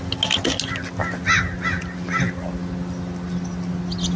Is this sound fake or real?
real